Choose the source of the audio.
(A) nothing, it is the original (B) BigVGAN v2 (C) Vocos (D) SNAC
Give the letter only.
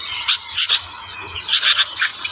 C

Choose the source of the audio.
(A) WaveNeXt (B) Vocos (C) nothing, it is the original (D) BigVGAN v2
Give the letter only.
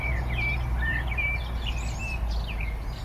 D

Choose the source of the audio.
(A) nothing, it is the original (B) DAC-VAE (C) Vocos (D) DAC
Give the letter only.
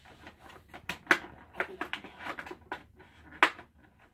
A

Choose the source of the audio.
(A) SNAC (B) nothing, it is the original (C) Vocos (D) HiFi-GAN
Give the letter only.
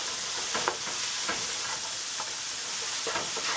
B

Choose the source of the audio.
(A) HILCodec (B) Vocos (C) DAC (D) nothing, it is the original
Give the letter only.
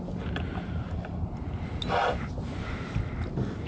D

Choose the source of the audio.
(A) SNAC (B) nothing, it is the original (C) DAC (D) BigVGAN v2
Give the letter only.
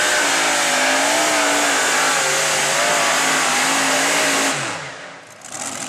B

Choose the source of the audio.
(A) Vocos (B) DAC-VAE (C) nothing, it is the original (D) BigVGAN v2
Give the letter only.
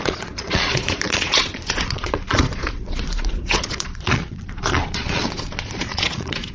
A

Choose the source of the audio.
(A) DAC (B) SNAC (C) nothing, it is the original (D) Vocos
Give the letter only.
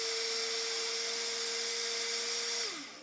C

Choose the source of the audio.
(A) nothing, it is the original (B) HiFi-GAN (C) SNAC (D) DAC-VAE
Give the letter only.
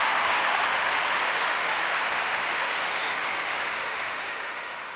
D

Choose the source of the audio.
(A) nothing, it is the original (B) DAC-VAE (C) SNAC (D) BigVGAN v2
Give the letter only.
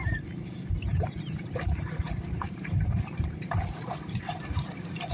D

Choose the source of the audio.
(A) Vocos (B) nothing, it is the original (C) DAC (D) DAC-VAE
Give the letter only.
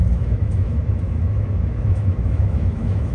D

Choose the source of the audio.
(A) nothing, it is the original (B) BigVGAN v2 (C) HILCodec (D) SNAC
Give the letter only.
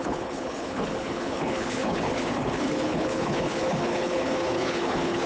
C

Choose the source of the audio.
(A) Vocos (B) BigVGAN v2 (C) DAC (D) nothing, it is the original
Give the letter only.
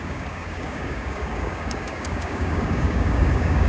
C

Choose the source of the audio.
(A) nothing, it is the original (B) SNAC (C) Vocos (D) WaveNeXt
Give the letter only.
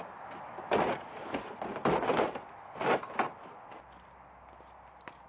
A